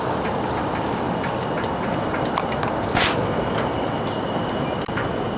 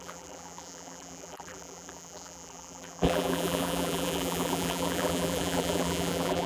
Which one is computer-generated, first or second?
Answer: second